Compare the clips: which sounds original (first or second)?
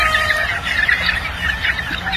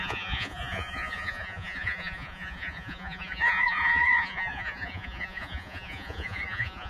first